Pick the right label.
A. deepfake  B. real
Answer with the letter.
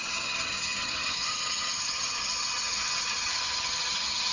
A